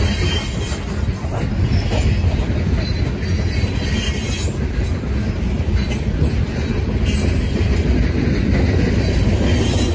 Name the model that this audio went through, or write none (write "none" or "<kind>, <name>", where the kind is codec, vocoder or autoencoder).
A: none